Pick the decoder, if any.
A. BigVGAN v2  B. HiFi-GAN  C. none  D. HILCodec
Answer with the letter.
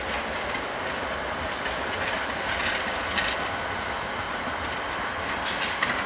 C